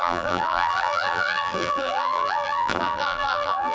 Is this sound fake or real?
fake